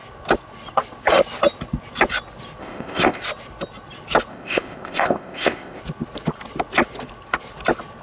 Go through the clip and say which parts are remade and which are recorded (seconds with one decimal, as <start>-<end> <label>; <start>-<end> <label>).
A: 0.0-2.6 recorded; 2.6-3.2 remade; 3.2-4.3 recorded; 4.3-5.8 remade; 5.8-8.0 recorded